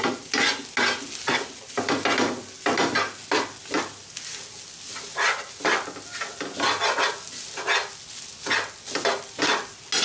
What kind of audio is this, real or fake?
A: real